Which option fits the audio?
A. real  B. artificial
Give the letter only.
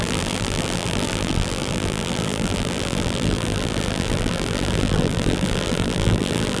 B